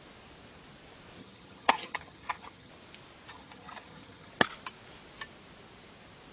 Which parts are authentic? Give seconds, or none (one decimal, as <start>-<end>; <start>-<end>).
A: 0.0-1.2; 2.7-3.3; 4.3-6.3